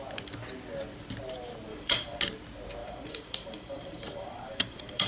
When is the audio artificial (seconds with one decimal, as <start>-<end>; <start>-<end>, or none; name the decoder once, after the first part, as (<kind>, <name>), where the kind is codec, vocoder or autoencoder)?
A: 1.7-2.2 (vocoder, BigVGAN v2); 2.8-5.1